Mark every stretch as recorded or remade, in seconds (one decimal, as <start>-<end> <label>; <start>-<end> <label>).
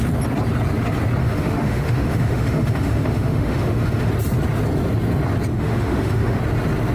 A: 0.0-1.2 recorded; 1.2-4.1 remade; 4.1-5.5 recorded; 5.5-6.4 remade; 6.4-6.9 recorded